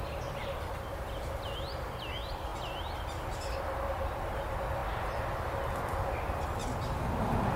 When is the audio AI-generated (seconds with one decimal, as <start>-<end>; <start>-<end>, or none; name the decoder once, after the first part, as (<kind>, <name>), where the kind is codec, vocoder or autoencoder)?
none